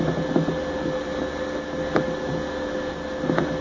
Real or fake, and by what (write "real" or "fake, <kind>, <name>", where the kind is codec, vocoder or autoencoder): real